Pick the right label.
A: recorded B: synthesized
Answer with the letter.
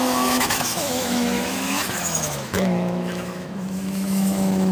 B